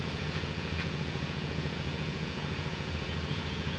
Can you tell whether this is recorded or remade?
remade